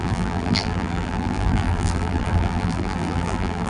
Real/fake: fake